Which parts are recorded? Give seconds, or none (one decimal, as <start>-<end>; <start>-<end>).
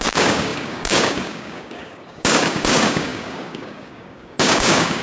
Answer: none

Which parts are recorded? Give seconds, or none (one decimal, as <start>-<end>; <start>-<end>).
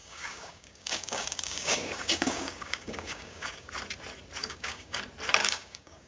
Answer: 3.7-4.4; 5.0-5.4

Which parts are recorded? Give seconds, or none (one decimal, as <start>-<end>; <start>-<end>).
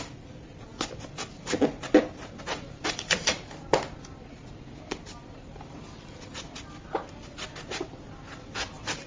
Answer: 0.0-9.1